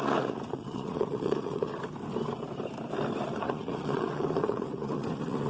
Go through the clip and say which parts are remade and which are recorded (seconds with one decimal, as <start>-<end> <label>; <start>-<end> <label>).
0.0-1.7 remade; 1.7-3.2 recorded; 3.2-5.5 remade